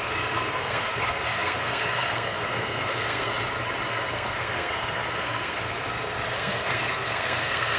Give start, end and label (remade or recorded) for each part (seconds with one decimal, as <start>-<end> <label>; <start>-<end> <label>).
0.0-3.3 remade; 3.3-3.9 recorded; 3.9-7.8 remade